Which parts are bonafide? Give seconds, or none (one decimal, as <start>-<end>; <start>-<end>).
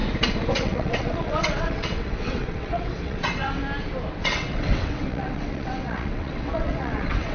0.0-0.5; 3.6-4.2